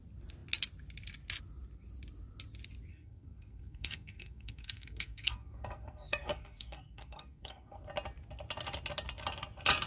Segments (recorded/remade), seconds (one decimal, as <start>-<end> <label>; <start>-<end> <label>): 0.0-2.9 recorded; 2.9-7.8 remade; 7.8-9.9 recorded